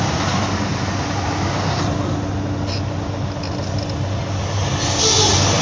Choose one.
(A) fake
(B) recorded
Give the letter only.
B